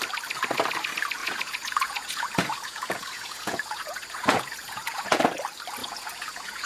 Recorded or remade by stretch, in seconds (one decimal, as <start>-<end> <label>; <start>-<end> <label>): 0.0-1.2 recorded; 1.2-5.2 remade; 5.2-5.8 recorded; 5.8-6.7 remade